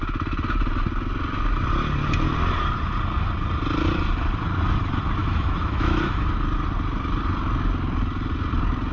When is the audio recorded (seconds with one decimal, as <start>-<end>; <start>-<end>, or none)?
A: 0.0-5.2; 6.3-8.9